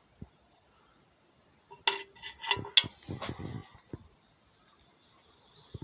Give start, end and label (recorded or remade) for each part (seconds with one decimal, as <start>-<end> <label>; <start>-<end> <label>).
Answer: 0.0-5.8 recorded